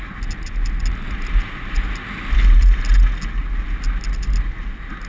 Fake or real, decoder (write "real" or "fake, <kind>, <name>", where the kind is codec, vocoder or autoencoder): real